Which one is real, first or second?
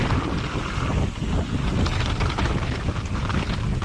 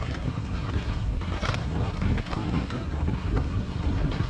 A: first